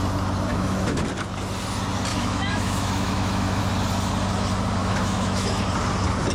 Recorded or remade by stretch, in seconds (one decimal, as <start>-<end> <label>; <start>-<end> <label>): 0.0-0.5 recorded; 0.5-1.0 remade; 1.0-2.1 recorded; 2.1-3.6 remade; 3.6-4.8 recorded; 4.8-5.6 remade; 5.6-6.3 recorded